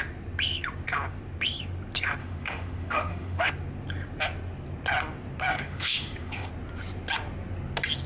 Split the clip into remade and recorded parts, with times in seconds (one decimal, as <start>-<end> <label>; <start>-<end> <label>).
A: 0.0-2.2 recorded; 2.2-3.5 remade; 3.5-5.5 recorded; 5.5-6.5 remade; 6.5-8.1 recorded

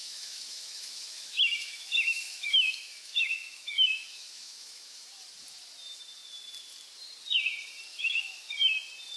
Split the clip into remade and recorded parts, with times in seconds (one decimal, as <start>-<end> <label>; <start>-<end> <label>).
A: 0.0-5.1 remade; 5.1-7.9 recorded; 7.9-8.5 remade; 8.5-9.2 recorded